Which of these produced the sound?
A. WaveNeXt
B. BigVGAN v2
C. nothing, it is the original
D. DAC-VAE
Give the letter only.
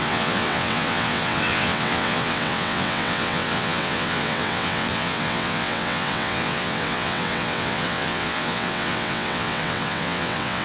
A